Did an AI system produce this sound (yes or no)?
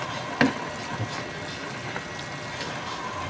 no